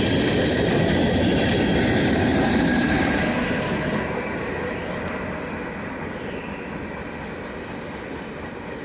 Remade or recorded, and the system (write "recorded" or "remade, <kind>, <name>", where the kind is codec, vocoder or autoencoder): recorded